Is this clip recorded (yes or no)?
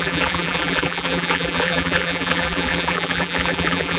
no